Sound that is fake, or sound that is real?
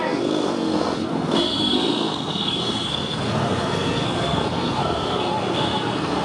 fake